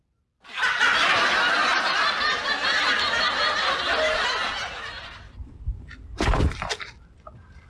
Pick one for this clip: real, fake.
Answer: real